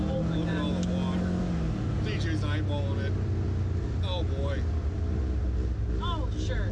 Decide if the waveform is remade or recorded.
recorded